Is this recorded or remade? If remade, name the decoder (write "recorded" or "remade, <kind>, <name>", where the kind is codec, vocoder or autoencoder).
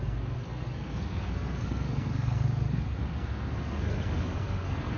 remade, codec, SNAC